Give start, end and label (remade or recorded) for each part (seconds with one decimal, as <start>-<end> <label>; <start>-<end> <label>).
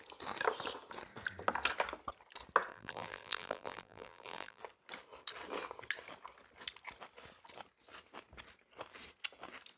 0.0-2.7 recorded; 2.7-4.6 remade; 4.6-9.8 recorded